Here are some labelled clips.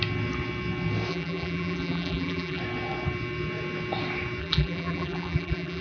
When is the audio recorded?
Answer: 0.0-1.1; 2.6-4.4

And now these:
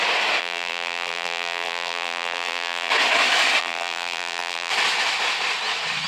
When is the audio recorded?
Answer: 0.0-0.4; 2.9-3.6; 4.7-6.1

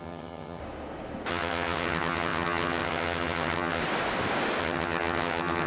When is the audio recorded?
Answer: 0.6-1.3; 3.8-4.6